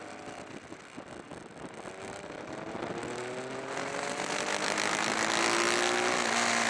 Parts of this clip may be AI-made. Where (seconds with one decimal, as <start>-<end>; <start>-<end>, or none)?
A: none